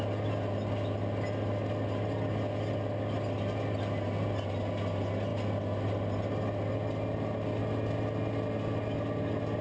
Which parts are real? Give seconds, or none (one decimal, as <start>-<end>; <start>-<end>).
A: 0.0-9.6